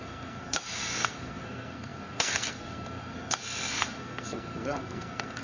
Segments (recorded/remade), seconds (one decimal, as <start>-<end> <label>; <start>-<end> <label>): 0.0-5.4 remade